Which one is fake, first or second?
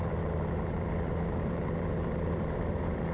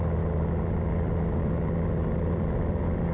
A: first